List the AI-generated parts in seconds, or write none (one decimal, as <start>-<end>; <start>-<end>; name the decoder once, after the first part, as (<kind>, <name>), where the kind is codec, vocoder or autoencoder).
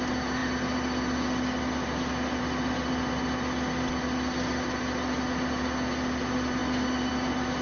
none